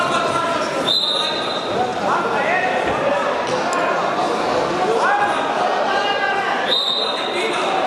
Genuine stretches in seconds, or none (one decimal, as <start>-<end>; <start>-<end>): 0.0-7.9